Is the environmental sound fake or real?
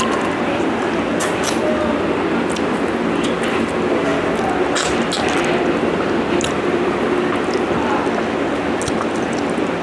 real